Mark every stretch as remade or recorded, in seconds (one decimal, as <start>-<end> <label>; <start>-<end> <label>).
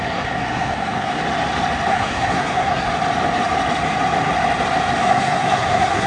0.0-1.2 remade; 1.2-1.9 recorded; 1.9-2.9 remade; 2.9-5.0 recorded; 5.0-6.1 remade